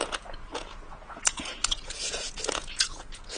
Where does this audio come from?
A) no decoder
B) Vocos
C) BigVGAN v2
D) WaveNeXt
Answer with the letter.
B